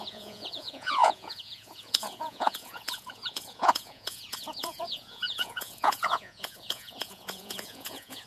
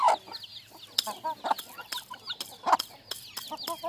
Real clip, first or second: second